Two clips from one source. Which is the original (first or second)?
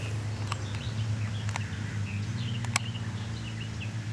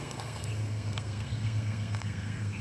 first